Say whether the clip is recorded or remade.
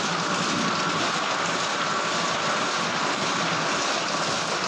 recorded